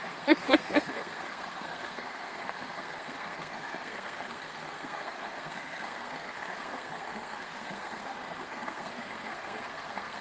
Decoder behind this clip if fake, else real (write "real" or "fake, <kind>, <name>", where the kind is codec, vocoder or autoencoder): fake, codec, SNAC